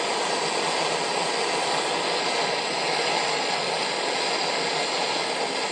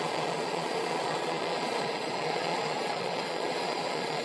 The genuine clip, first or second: first